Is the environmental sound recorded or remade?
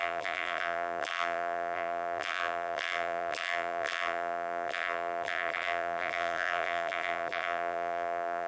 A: remade